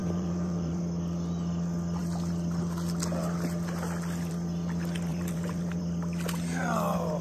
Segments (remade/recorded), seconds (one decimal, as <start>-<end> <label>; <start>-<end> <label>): 0.0-0.8 remade; 0.8-5.1 recorded; 5.1-5.8 remade; 5.8-7.2 recorded